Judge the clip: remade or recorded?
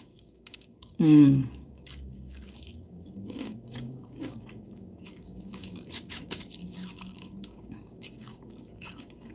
remade